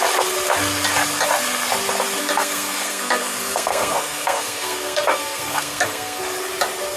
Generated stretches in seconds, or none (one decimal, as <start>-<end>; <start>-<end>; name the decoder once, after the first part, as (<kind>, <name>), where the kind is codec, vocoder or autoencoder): 2.2-6.2 (codec, SNAC)